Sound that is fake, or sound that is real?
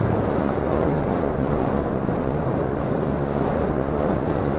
fake